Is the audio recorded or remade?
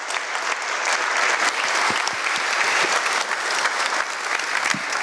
recorded